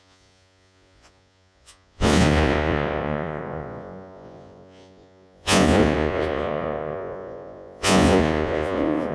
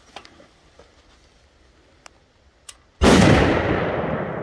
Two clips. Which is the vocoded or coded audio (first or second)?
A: first